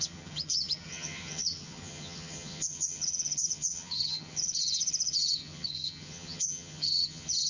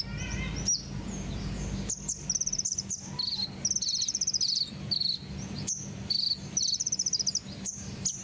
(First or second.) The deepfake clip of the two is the first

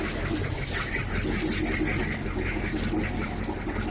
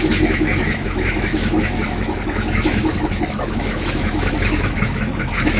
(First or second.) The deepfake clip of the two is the second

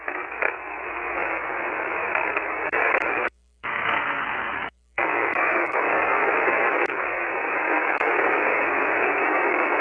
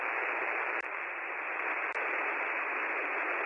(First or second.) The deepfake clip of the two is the first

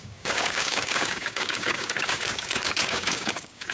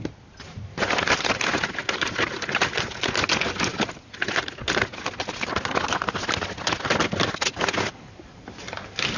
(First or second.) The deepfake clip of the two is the first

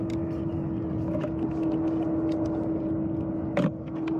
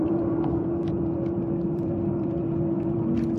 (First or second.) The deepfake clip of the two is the second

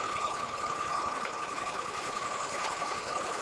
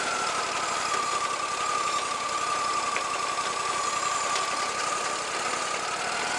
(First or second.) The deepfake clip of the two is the first